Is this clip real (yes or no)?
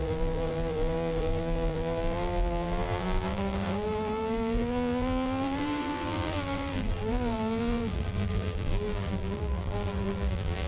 no